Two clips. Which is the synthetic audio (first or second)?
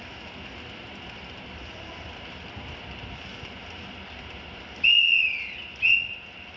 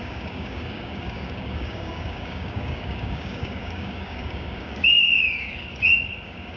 second